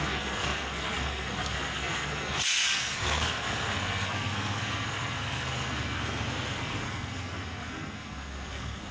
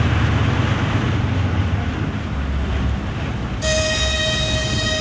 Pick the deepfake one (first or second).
first